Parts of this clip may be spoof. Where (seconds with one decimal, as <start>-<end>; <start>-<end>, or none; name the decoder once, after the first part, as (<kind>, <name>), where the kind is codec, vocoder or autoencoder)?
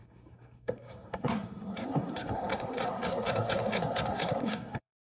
0.0-5.1 (codec, SNAC)